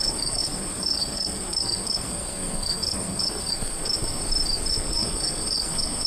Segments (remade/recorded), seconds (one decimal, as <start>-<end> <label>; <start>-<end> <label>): 0.0-4.2 remade; 4.2-4.7 recorded; 4.7-6.1 remade